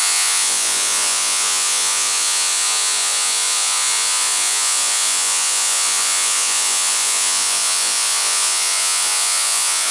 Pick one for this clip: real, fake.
fake